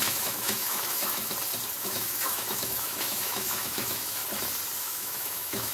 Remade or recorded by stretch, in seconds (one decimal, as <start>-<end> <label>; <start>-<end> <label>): 0.0-1.3 remade; 1.3-1.8 recorded; 1.8-4.2 remade; 4.2-4.8 recorded; 4.8-5.7 remade